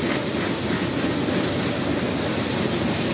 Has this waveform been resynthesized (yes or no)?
no